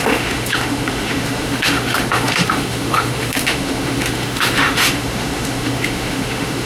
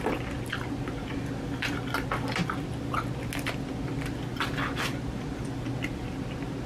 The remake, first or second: first